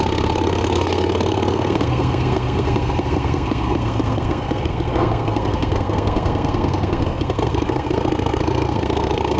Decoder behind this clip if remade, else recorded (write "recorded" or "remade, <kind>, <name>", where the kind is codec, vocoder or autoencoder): remade, codec, SNAC